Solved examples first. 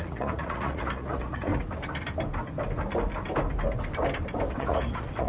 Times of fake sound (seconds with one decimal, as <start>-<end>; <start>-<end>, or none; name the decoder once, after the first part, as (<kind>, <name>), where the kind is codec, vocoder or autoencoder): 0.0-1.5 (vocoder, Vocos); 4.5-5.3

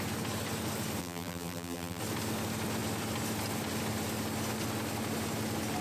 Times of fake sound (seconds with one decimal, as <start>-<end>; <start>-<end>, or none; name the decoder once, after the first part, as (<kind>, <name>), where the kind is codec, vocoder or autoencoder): 1.0-2.0 (vocoder, BigVGAN v2)

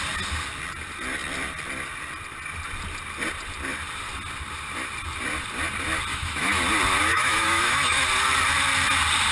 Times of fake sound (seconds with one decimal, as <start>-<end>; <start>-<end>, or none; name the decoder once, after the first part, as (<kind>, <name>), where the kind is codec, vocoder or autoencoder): 6.1-6.6 (autoencoder, DAC-VAE); 7.1-8.0